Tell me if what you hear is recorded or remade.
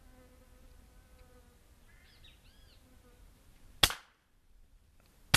recorded